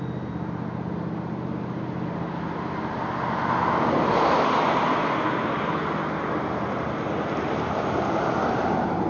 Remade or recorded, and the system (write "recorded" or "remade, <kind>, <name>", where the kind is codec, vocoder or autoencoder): recorded